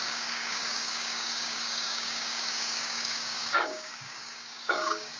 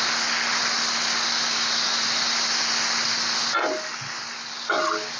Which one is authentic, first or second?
second